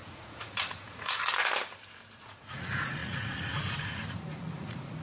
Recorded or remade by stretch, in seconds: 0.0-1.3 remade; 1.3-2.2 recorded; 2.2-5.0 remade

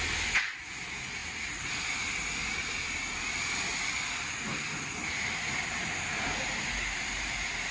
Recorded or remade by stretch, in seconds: 0.0-7.7 recorded

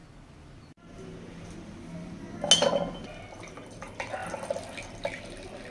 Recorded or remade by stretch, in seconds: 0.0-5.7 recorded

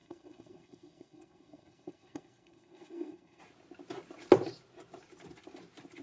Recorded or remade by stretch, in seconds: 0.0-3.4 remade; 3.4-6.0 recorded

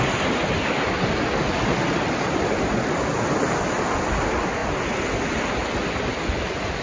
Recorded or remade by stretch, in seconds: 0.0-6.8 recorded

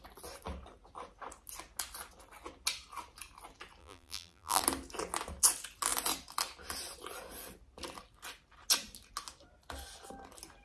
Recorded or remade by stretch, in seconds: 0.0-3.8 recorded; 3.8-4.6 remade; 4.6-10.6 recorded

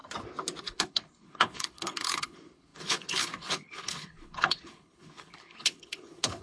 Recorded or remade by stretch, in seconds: 0.0-0.6 recorded; 0.6-6.4 remade